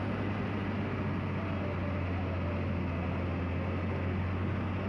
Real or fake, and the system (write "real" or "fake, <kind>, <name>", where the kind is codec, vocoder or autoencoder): real